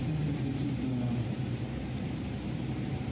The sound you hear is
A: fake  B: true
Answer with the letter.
A